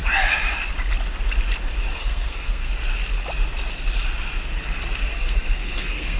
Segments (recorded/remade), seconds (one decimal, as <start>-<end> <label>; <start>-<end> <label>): 0.0-1.9 recorded; 1.9-2.7 remade; 2.7-5.1 recorded; 5.1-6.2 remade